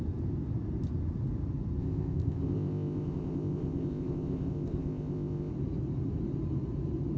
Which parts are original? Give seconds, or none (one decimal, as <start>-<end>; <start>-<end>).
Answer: 0.0-1.8; 5.5-7.2